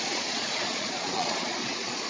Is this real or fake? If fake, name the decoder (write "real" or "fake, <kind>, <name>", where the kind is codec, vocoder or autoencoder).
fake, vocoder, Vocos